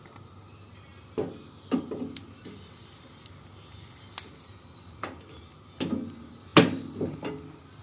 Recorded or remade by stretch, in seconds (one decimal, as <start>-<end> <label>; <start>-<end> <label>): 0.0-7.8 recorded